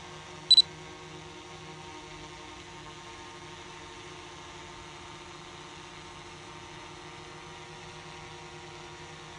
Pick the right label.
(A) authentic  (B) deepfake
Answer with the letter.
A